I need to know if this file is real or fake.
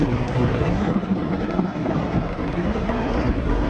fake